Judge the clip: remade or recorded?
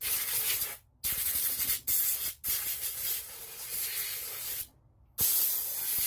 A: recorded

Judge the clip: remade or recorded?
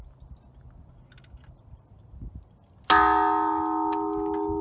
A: recorded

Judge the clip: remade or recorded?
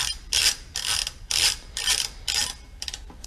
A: remade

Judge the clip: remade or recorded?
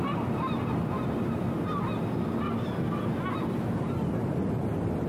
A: recorded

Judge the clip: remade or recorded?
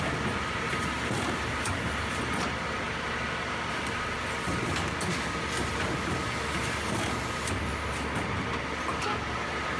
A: recorded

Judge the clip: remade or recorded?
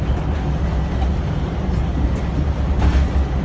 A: recorded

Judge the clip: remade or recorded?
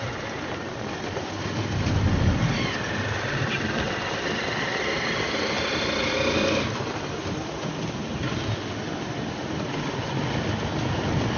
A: recorded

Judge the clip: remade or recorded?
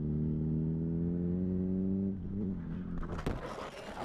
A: recorded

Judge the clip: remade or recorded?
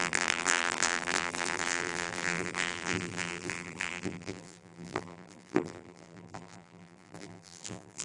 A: remade